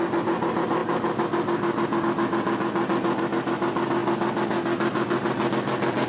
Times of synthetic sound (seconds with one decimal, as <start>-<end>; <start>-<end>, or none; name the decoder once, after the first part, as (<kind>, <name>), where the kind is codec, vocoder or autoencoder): none